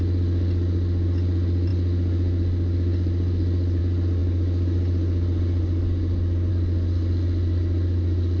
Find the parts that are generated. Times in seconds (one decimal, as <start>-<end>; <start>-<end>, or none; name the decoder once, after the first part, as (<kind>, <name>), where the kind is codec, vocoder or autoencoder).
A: none